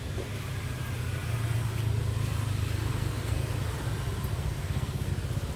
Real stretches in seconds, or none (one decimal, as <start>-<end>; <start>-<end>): 0.0-2.9; 3.5-4.3; 5.1-5.6